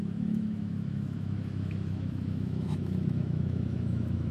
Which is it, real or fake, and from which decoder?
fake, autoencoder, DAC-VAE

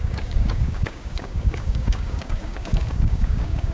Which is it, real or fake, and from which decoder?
fake, codec, DAC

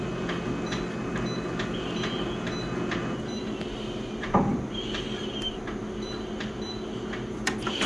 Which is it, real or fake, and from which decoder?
real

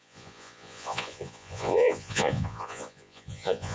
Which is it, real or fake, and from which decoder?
fake, vocoder, Vocos